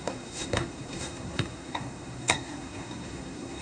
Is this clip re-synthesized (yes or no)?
yes